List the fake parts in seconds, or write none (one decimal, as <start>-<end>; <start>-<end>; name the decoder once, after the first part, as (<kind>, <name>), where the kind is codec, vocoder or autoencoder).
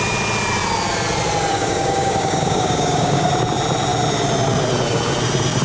1.5-3.3 (codec, DAC)